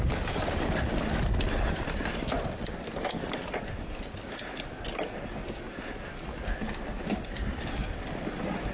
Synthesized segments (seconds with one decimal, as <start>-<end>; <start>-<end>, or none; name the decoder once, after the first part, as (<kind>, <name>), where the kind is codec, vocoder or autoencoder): 7.8-8.7 (vocoder, BigVGAN v2)